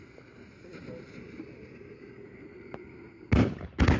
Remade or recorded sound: recorded